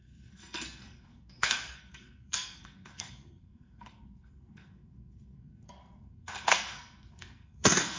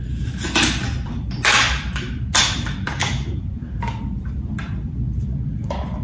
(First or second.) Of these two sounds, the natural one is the second